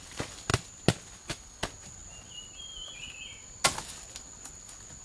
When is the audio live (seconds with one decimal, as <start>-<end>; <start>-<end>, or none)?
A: 0.0-5.0